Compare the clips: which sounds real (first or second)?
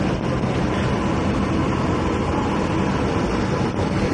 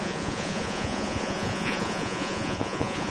first